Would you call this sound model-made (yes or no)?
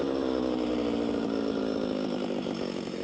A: yes